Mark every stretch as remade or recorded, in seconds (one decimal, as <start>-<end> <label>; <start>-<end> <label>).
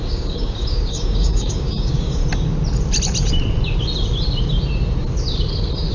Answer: 0.0-2.2 remade; 2.2-5.9 recorded